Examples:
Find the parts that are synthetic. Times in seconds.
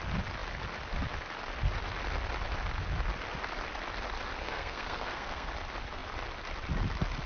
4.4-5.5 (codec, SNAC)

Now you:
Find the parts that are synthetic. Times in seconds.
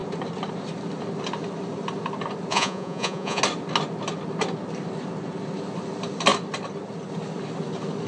2.5-3.4 (vocoder, Vocos)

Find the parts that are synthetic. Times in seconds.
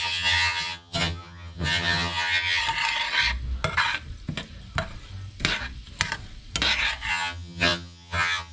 0.0-2.6 (vocoder, HiFi-GAN); 7.1-8.5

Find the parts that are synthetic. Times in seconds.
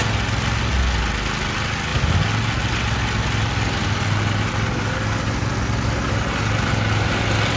none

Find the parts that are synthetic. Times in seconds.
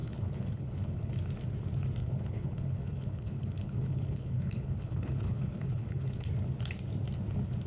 0.0-1.1 (codec, HILCodec); 2.0-6.3